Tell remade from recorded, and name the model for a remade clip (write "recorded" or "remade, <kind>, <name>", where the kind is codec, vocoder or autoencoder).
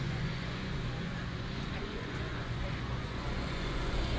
remade, vocoder, Vocos